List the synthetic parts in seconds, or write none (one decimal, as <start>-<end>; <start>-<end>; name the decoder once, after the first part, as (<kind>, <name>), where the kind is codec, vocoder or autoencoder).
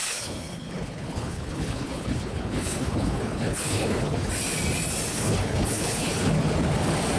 0.0-4.3 (codec, HILCodec); 5.1-6.5